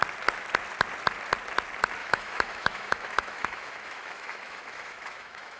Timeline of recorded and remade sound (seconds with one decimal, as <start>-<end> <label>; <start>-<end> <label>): 0.0-2.0 recorded; 2.0-5.6 remade